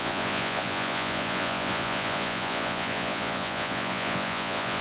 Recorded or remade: remade